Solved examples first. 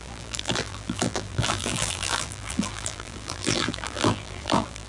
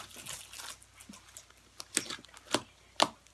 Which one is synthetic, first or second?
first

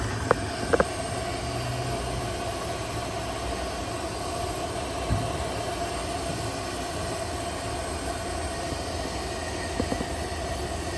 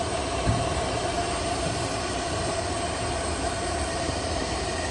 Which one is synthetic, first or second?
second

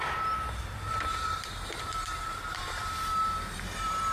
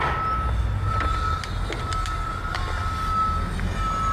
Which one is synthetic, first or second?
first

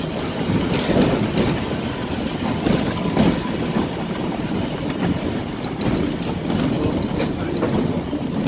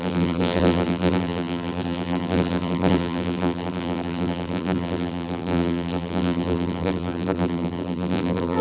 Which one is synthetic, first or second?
second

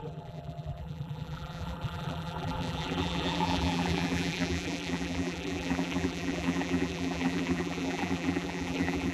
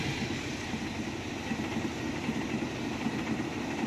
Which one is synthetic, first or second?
first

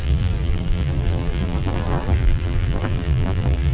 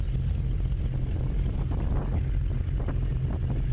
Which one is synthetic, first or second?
first